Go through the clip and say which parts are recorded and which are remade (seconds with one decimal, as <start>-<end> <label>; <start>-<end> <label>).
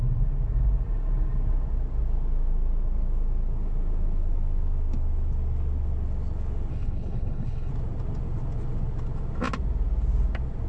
0.0-6.7 recorded; 6.7-7.7 remade; 7.7-10.7 recorded